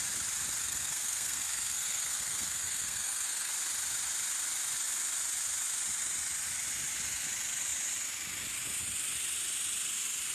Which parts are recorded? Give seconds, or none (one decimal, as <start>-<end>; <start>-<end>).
0.0-0.6; 3.5-10.3